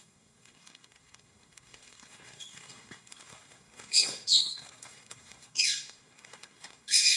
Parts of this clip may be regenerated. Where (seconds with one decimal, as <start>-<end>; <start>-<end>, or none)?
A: 0.0-7.2